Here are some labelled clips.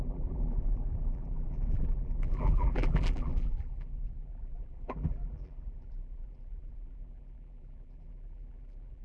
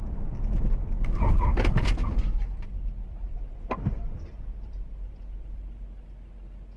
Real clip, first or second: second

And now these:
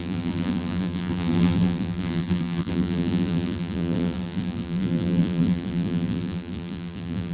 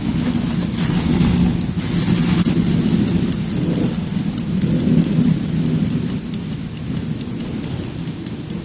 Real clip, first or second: second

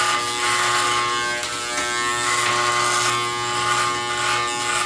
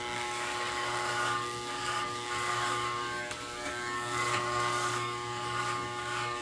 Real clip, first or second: first